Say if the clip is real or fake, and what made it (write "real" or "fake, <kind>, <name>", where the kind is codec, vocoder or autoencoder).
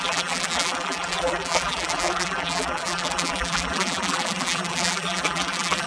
fake, vocoder, BigVGAN v2